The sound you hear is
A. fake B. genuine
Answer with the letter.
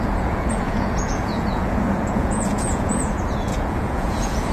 A